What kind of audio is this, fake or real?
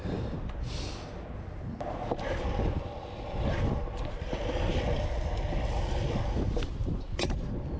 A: real